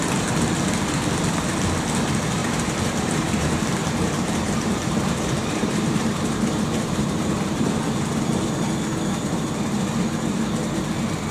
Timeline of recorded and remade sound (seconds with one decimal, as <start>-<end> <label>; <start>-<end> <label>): 0.0-2.4 recorded; 2.4-7.6 remade; 7.6-11.3 recorded